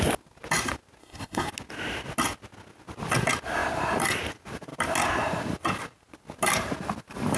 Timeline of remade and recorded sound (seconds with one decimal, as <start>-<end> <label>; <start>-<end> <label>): 0.0-1.0 recorded; 1.0-1.5 remade; 1.5-7.4 recorded